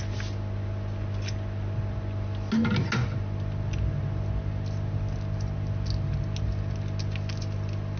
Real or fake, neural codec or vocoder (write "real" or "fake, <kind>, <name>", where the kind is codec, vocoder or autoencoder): real